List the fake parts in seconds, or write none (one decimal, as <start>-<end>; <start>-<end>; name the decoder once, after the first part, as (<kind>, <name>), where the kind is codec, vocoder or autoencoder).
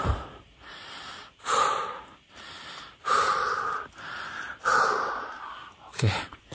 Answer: 5.9-6.5 (vocoder, Vocos)